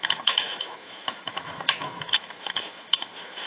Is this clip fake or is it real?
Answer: fake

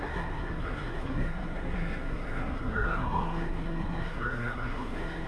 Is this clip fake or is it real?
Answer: fake